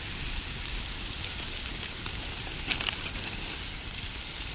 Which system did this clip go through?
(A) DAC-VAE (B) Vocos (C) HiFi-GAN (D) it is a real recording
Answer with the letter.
D